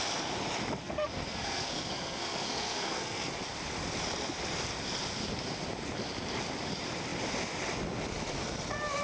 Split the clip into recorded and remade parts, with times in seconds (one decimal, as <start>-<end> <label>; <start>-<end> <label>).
0.0-0.8 recorded; 0.8-3.3 remade; 3.3-9.0 recorded